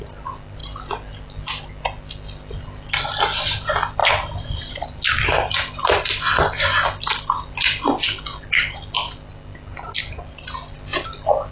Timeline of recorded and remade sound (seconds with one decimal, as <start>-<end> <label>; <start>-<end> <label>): 0.0-11.5 recorded